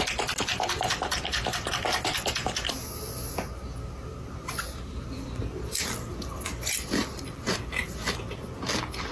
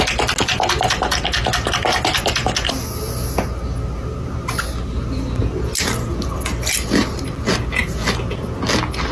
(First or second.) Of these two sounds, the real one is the second